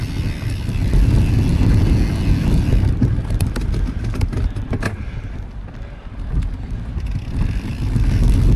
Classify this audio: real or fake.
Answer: real